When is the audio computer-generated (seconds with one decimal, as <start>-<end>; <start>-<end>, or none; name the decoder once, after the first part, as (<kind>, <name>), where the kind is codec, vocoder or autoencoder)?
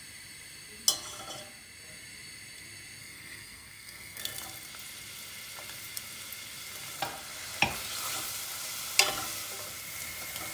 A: 3.0-4.2 (codec, SNAC)